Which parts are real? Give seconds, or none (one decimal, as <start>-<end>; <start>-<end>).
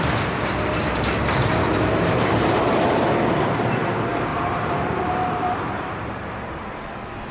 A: 0.0-1.2; 2.9-4.3; 6.5-7.3